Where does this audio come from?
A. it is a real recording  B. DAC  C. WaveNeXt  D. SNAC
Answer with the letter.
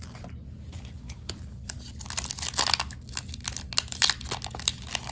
A